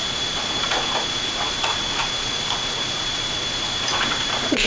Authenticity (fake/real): fake